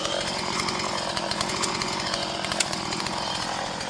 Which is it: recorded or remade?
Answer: remade